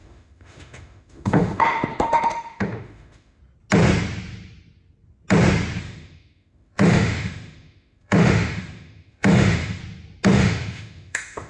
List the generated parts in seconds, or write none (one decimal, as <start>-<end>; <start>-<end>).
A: 0.0-3.4; 5.8-9.8; 10.3-11.5